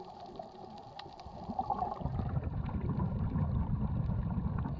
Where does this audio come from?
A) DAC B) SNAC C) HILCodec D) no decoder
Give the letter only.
D